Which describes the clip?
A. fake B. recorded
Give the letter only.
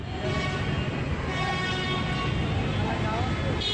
B